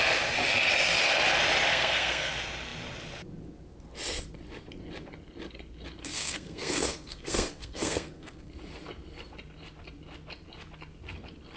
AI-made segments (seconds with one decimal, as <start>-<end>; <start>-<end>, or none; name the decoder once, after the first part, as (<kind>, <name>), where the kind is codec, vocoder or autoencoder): 1.7-2.3 (codec, SNAC); 6.0-8.5